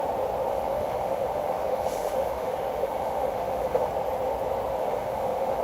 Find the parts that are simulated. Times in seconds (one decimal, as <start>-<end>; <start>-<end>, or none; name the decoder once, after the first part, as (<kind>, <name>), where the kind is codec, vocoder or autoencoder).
0.5-3.9 (autoencoder, DAC-VAE); 4.8-5.6